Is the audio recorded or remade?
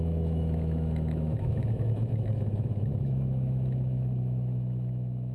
remade